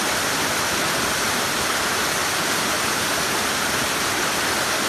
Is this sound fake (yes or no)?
no